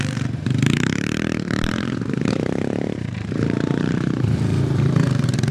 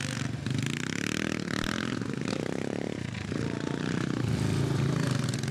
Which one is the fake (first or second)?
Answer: first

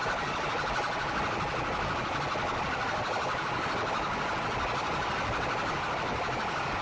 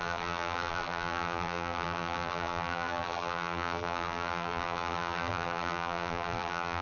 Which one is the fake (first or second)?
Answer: second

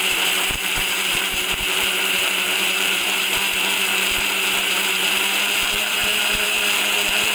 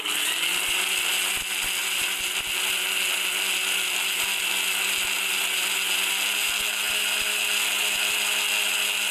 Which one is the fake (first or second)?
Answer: first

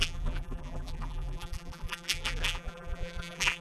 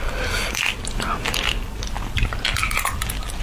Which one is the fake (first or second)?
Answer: first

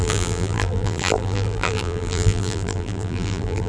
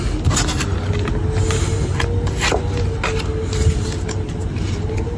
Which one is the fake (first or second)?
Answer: first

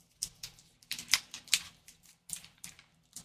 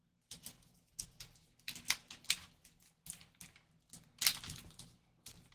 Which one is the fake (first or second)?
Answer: first